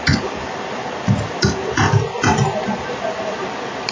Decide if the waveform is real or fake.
real